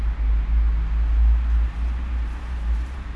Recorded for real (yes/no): yes